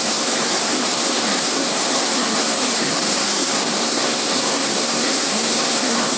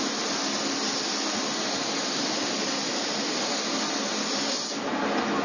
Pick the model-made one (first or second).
first